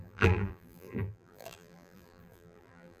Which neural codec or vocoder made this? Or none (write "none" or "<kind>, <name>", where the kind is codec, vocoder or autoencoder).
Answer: vocoder, BigVGAN v2